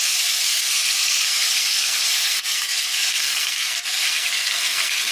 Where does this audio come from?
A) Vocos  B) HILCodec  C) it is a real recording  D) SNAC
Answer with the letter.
D